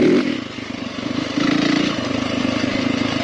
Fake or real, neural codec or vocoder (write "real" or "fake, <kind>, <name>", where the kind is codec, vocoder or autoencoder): real